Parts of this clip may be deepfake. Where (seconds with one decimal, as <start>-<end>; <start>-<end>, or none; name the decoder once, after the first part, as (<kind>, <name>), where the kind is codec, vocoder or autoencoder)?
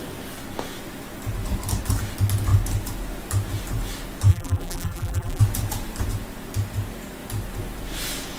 4.3-5.4 (vocoder, BigVGAN v2)